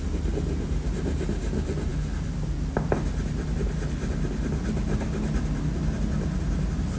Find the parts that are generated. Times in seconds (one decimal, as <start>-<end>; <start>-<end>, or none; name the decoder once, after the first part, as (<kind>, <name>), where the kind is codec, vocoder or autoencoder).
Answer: none